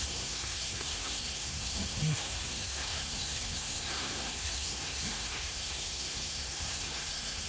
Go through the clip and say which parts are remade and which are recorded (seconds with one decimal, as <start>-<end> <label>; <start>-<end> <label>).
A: 0.0-7.5 remade